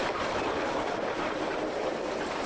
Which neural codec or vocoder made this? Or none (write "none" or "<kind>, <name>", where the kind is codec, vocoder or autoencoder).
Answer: none